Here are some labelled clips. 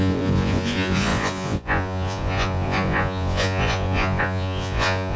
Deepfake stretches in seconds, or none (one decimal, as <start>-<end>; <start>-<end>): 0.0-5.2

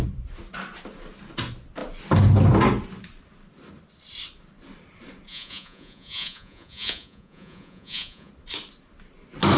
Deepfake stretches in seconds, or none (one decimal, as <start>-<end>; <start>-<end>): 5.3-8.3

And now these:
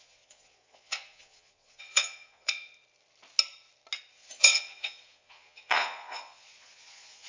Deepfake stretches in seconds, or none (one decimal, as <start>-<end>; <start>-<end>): 0.0-2.7; 4.1-7.3

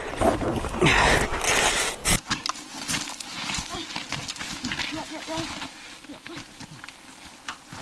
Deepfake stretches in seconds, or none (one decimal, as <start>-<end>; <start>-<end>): none

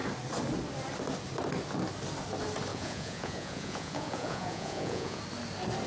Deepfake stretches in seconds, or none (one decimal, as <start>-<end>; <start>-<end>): 2.7-5.2

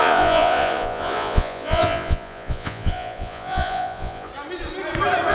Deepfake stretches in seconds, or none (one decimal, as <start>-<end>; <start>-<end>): 0.0-4.3

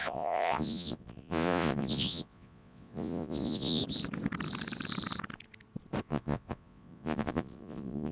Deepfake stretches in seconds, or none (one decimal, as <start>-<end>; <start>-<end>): 0.0-3.8; 6.0-8.1